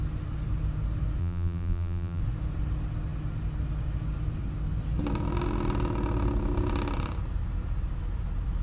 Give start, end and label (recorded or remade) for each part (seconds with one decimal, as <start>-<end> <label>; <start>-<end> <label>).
0.0-1.2 recorded; 1.2-2.2 remade; 2.2-8.6 recorded